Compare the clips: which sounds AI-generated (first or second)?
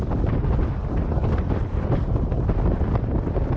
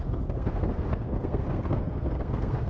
second